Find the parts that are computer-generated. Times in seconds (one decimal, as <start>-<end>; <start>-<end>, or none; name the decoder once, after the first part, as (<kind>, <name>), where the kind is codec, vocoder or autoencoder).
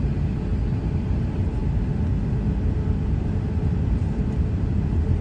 0.0-0.5 (vocoder, BigVGAN v2); 1.1-1.6; 3.5-5.2